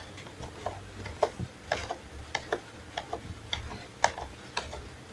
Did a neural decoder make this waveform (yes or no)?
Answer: no